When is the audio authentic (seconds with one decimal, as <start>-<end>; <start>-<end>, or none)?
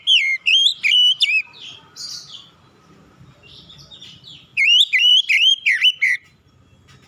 0.0-0.7; 2.0-4.5; 6.5-7.1